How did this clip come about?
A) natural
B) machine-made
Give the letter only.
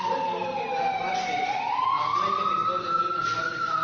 A